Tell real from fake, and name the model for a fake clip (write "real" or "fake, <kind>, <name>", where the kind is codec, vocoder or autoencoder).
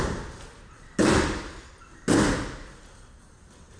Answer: real